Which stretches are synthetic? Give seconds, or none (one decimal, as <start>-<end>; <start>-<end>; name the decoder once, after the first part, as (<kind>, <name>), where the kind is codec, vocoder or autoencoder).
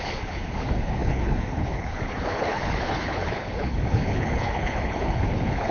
0.0-5.7 (codec, HILCodec)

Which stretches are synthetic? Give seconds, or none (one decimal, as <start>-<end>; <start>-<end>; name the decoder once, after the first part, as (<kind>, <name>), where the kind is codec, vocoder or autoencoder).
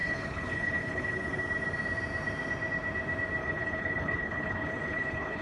0.0-1.3 (codec, HILCodec); 3.4-5.4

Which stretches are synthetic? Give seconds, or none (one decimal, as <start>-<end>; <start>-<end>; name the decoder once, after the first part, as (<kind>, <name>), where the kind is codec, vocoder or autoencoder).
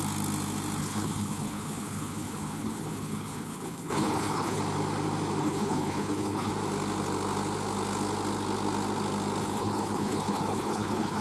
0.8-4.6 (codec, HILCodec); 5.4-6.5; 9.4-11.2